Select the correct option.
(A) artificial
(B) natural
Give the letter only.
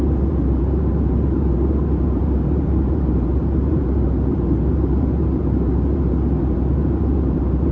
A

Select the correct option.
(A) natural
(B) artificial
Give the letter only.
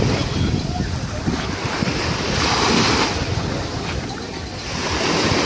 A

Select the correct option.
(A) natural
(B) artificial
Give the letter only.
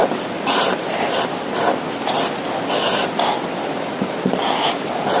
A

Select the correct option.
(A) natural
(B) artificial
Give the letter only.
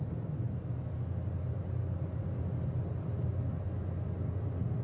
A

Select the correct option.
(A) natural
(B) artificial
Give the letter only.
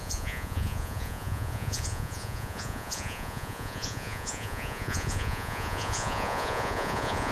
B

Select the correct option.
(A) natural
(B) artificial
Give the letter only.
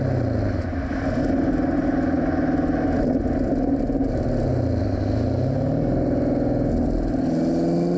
A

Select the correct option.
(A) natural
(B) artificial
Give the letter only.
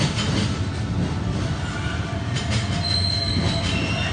A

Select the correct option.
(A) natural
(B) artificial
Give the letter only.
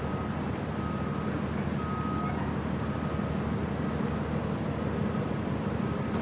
A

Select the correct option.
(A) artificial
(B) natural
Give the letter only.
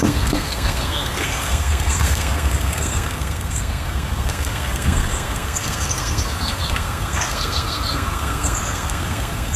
A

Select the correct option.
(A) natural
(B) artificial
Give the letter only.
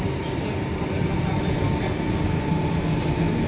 A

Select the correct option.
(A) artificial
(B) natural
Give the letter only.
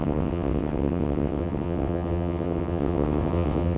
A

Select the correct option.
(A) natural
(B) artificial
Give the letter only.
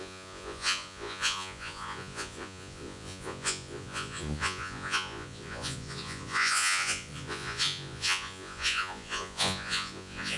B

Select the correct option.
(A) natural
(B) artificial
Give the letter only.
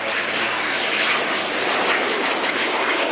B